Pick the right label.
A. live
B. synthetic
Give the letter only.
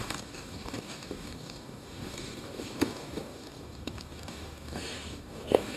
B